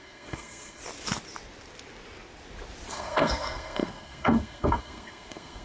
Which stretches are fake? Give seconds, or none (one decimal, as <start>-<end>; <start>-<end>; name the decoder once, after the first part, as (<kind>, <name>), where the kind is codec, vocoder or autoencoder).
0.0-0.8 (codec, SNAC); 2.9-5.6